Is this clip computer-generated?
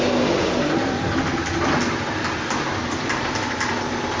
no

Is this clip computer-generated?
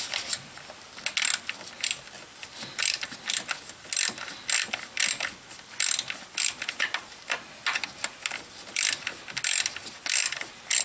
no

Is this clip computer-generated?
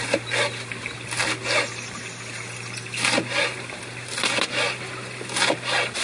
no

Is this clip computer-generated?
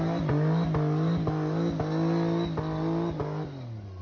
no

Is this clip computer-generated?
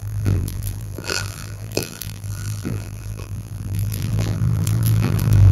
yes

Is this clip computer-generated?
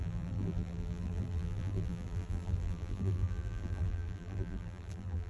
yes